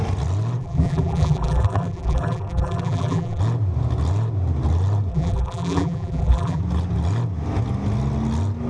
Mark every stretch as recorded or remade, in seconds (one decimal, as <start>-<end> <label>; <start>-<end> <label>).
0.0-0.6 recorded; 0.6-3.4 remade; 3.4-5.1 recorded; 5.1-6.6 remade; 6.6-8.7 recorded